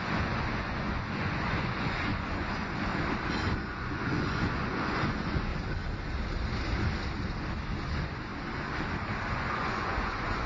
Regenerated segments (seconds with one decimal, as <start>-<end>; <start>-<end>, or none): 0.0-2.9; 3.5-5.5; 7.9-8.3; 9.3-10.5